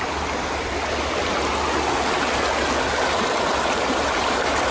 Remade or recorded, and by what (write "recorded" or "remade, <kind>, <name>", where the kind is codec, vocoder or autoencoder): recorded